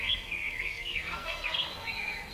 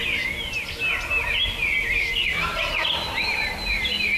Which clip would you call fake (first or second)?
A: first